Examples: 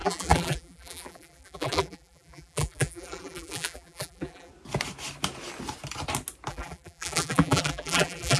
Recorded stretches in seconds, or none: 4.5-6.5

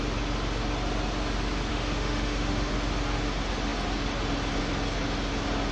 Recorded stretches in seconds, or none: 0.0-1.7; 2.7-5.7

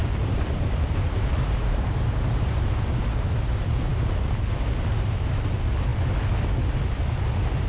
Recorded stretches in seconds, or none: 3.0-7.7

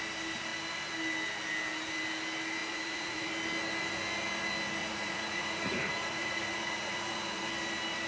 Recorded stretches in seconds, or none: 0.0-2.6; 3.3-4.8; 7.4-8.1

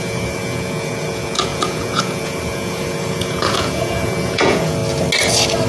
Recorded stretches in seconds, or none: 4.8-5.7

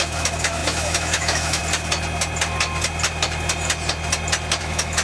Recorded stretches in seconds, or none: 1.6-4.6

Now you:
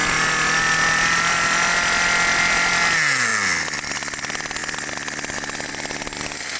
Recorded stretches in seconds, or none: 0.0-6.6

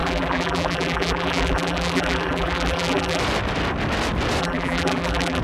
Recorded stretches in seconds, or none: 3.2-4.4